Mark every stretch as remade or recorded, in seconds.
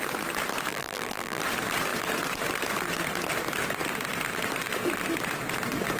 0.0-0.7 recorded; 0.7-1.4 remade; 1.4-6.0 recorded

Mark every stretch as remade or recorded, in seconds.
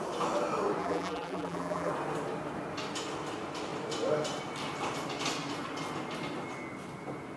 0.0-0.8 recorded; 0.8-1.9 remade; 1.9-7.4 recorded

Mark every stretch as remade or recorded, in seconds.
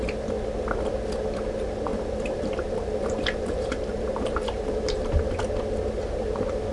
0.0-1.9 recorded; 1.9-5.4 remade; 5.4-6.7 recorded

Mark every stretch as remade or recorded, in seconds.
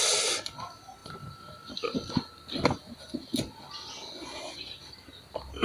0.0-5.6 recorded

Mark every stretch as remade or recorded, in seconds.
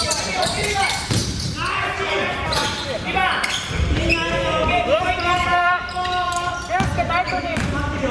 0.0-2.6 remade; 2.6-4.7 recorded; 4.7-5.5 remade; 5.5-7.1 recorded; 7.1-8.1 remade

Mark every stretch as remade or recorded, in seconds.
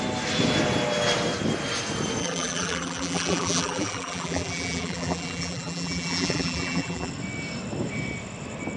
0.0-2.2 recorded; 2.2-7.1 remade; 7.1-8.8 recorded